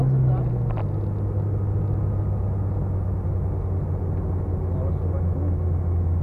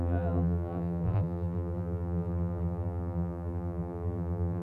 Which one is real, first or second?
first